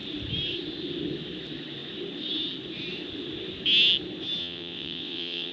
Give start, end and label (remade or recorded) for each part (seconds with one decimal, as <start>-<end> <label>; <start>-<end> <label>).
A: 0.0-4.4 recorded; 4.4-5.5 remade